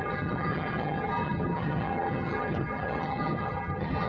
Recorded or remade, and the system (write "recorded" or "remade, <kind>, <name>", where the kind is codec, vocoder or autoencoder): remade, vocoder, HiFi-GAN